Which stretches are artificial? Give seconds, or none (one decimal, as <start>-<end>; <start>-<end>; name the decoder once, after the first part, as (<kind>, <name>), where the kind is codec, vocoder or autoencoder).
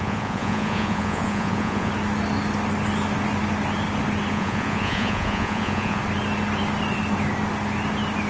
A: 0.0-1.9 (vocoder, Vocos); 4.3-6.0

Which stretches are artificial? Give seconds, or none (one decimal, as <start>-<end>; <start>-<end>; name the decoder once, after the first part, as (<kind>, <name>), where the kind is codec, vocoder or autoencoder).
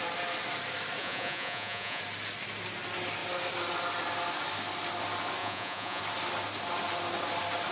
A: 1.0-2.0 (vocoder, Vocos); 5.4-6.0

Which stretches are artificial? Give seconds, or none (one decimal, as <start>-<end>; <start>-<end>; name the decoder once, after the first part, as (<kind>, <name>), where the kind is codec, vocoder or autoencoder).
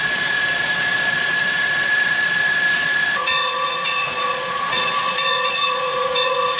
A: 0.0-6.6 (vocoder, Vocos)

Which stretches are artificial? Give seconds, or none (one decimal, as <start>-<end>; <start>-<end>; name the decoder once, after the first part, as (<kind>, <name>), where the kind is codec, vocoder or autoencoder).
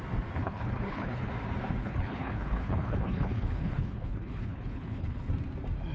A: 0.4-1.3 (codec, HILCodec); 1.8-5.3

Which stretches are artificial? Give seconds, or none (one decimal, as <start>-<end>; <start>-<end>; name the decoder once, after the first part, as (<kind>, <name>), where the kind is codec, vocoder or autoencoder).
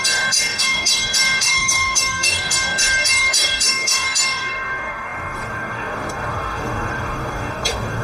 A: 0.0-8.0 (codec, DAC)